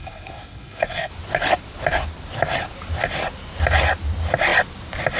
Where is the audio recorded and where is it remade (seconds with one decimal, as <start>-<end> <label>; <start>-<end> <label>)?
0.0-1.1 remade; 1.1-5.2 recorded